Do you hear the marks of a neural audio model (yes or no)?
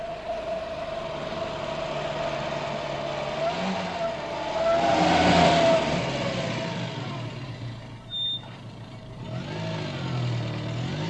no